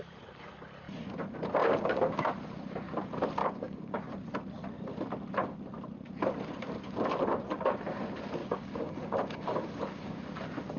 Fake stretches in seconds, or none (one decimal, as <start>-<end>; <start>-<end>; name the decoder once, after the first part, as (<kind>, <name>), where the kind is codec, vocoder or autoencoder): 1.6-2.3 (codec, DAC); 3.4-4.0; 8.4-10.2